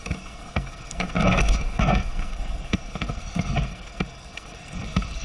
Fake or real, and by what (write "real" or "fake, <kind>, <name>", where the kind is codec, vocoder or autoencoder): fake, codec, SNAC